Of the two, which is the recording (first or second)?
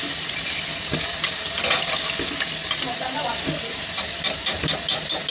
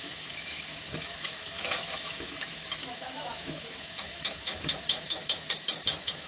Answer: first